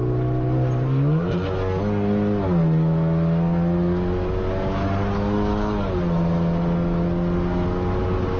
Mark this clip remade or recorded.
recorded